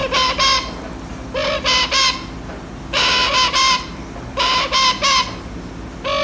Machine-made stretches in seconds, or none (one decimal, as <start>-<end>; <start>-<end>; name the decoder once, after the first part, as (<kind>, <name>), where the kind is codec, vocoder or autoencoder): none